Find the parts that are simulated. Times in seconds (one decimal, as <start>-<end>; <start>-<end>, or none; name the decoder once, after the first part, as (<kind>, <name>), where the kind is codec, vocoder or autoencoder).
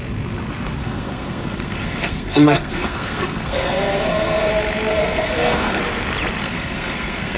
0.8-4.5 (codec, SNAC); 4.9-5.8; 6.4-7.4